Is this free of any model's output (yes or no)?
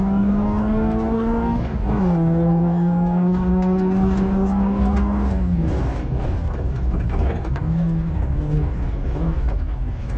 no